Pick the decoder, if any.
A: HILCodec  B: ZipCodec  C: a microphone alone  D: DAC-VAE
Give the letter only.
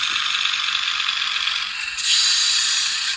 C